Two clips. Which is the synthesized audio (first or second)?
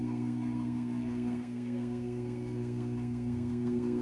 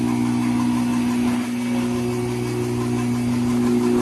first